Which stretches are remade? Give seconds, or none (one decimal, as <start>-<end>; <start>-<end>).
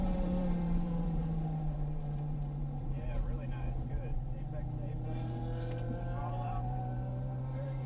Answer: 0.0-5.4; 6.2-7.9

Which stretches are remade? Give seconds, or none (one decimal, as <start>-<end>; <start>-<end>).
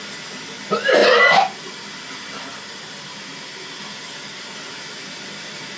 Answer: none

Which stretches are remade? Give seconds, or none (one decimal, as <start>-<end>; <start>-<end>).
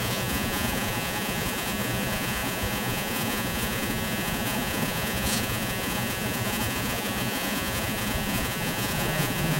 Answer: 0.0-9.6